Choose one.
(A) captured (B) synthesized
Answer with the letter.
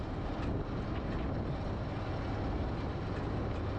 A